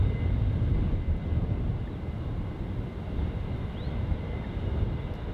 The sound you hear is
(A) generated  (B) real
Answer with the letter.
B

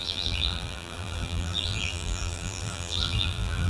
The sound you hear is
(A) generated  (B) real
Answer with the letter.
A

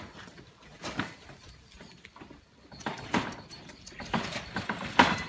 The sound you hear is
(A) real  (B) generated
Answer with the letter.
A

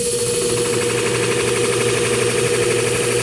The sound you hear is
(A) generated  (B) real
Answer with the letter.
B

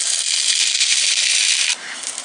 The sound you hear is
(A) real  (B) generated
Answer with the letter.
B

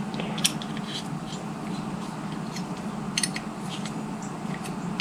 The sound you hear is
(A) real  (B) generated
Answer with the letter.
A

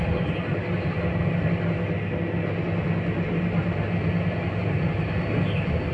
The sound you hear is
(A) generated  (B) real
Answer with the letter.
B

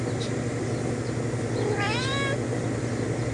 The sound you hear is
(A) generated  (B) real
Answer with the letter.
B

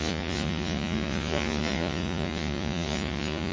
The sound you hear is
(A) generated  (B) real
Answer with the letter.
A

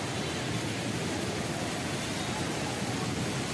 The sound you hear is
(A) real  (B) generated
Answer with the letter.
A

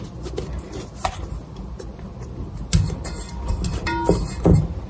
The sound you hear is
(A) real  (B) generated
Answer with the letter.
A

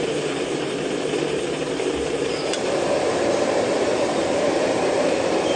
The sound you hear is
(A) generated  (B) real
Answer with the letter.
A